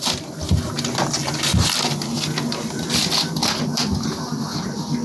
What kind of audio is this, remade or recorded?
recorded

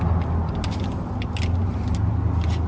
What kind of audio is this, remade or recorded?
recorded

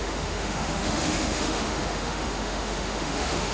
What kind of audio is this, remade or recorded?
remade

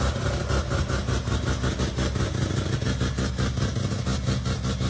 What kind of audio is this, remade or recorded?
recorded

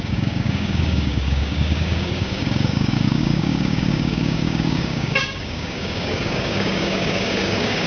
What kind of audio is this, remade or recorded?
remade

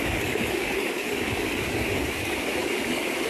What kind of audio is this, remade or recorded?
remade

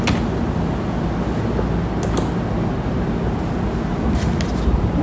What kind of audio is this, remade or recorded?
recorded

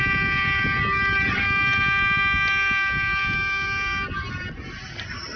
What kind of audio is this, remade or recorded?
recorded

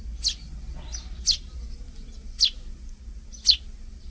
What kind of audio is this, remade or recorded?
recorded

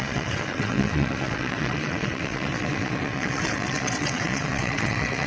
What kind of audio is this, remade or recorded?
remade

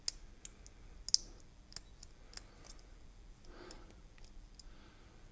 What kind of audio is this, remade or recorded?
recorded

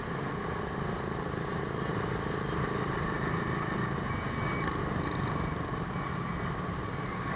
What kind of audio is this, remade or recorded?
recorded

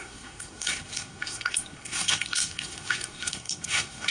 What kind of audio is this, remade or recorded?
remade